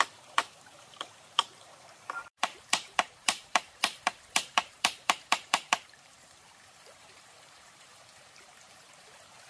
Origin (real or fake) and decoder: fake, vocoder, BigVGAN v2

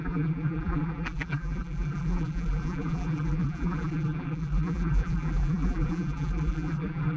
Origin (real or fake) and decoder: fake, vocoder, BigVGAN v2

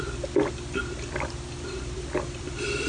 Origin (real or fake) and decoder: fake, vocoder, BigVGAN v2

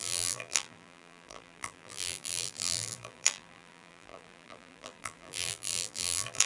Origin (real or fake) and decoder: fake, vocoder, BigVGAN v2